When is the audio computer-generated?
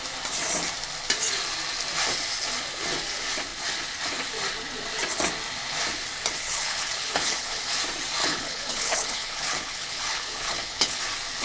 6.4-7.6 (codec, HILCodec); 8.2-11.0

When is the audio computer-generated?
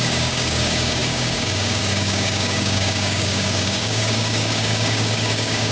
0.0-5.7 (codec, DAC)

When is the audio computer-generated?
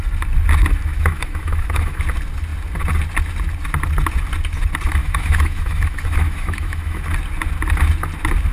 0.9-2.0 (autoencoder, DAC-VAE); 5.0-7.0